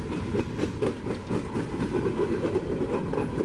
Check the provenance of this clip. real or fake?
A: real